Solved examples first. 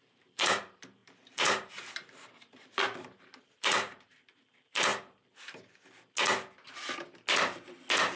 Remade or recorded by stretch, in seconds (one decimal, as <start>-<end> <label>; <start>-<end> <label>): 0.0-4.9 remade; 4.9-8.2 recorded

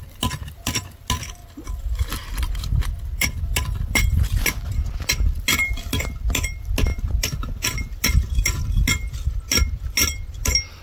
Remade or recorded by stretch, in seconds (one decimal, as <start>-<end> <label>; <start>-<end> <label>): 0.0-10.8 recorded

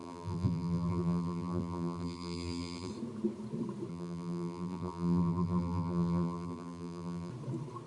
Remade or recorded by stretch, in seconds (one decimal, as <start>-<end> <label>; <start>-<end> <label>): 0.0-2.9 remade; 2.9-3.9 recorded; 3.9-7.3 remade; 7.3-7.9 recorded

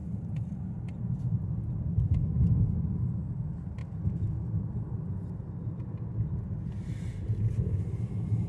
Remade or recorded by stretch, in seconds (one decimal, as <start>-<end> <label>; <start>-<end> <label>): 0.0-2.0 remade; 2.0-8.5 recorded

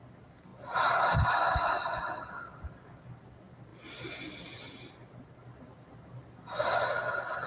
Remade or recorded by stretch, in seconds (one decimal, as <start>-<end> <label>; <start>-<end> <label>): 0.0-5.4 recorded; 5.4-6.6 remade; 6.6-7.5 recorded

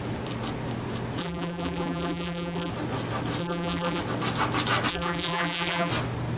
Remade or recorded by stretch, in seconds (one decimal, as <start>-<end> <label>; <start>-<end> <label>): 0.0-1.2 recorded; 1.2-2.7 remade; 2.7-3.4 recorded; 3.4-4.0 remade; 4.0-4.9 recorded; 4.9-5.9 remade; 5.9-6.4 recorded